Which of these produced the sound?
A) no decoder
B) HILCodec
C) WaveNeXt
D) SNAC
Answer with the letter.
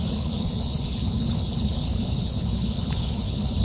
B